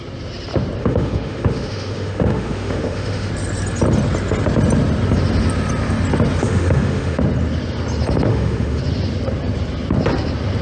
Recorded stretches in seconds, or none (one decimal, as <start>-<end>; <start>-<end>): 0.0-0.8; 3.3-6.4; 7.2-8.3; 8.8-10.6